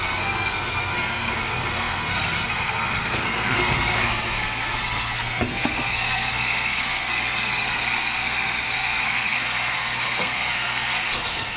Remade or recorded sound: remade